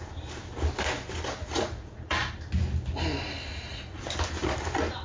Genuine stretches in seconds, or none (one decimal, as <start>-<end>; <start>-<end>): 0.0-1.4; 2.3-3.5; 4.0-5.0